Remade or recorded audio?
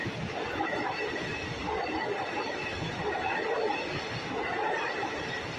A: recorded